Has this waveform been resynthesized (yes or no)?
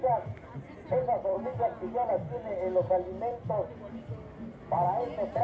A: no